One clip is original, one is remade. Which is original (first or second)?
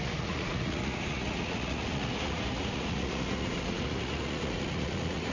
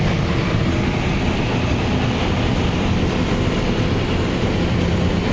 second